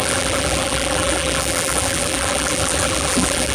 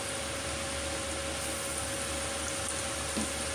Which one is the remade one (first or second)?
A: first